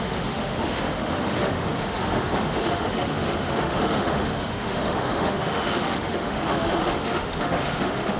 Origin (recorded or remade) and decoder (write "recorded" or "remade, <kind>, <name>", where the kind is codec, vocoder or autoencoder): remade, autoencoder, DAC-VAE